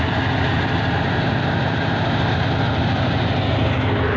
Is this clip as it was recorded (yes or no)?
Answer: yes